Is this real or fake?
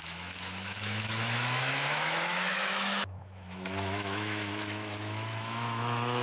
fake